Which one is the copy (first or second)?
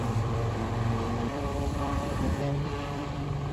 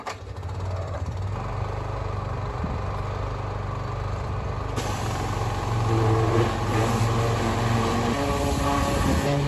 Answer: first